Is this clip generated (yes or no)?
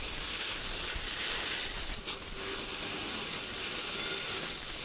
no